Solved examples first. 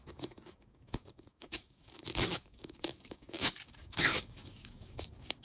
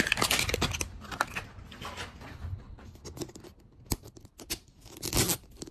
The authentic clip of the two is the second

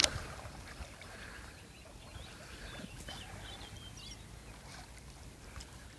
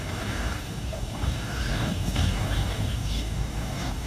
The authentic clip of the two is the first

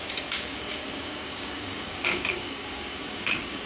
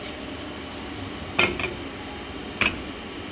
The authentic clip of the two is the second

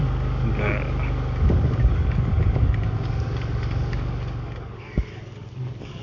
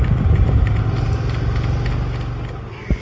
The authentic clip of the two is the second